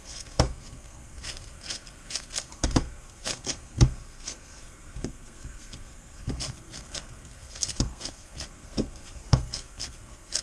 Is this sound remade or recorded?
remade